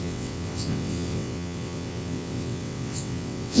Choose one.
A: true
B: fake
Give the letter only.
B